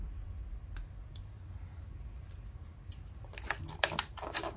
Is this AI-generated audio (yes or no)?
no